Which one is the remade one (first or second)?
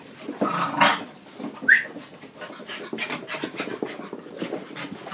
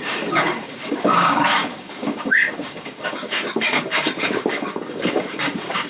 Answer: second